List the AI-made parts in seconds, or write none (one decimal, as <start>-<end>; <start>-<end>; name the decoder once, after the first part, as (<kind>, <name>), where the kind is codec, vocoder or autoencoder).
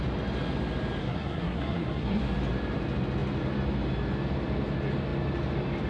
1.0-2.2 (codec, SNAC)